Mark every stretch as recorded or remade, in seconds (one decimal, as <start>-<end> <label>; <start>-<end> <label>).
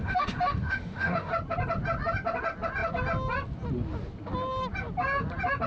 0.0-1.3 remade; 1.3-5.7 recorded